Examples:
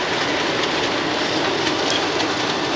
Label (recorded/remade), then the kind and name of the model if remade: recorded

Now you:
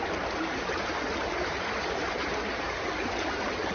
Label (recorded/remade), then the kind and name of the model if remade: recorded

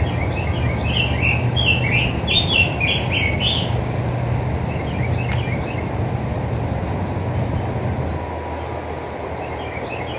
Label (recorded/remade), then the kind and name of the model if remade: recorded